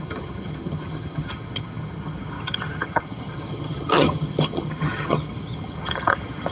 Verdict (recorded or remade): remade